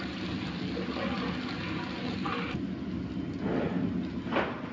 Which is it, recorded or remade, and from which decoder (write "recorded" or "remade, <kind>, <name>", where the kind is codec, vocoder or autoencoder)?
recorded